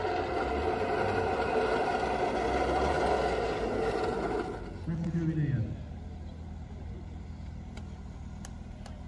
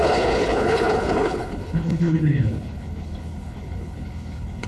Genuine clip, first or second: first